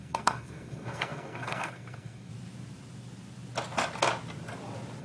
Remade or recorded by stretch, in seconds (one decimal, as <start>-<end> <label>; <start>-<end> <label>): 0.0-2.3 remade; 2.3-5.0 recorded